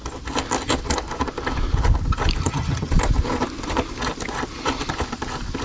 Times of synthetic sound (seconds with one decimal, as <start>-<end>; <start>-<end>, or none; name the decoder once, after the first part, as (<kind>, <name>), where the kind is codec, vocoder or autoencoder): 2.4-2.9 (vocoder, HiFi-GAN)